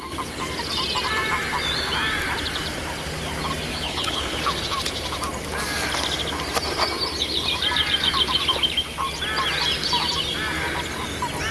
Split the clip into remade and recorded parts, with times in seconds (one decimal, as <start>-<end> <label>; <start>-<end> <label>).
0.0-3.7 recorded; 3.7-4.4 remade; 4.4-11.5 recorded